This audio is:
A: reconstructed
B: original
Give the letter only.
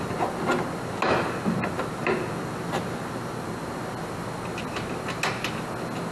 B